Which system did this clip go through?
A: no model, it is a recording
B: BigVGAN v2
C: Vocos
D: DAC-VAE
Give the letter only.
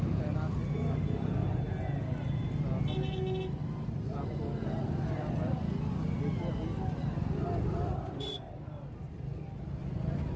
A